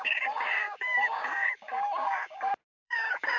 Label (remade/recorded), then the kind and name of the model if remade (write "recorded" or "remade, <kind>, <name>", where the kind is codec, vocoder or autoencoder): remade, codec, DAC